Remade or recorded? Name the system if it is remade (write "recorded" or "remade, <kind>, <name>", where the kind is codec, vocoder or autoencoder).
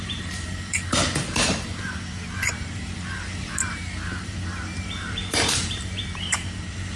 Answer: remade, vocoder, BigVGAN v2